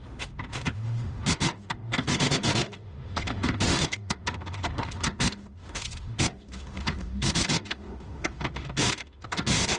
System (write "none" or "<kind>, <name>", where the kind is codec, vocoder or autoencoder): autoencoder, DAC-VAE